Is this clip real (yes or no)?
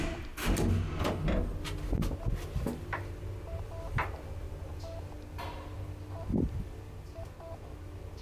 yes